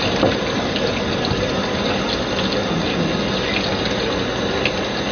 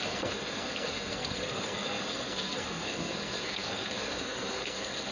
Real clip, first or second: first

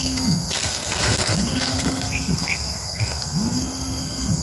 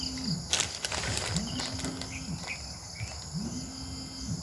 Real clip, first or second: second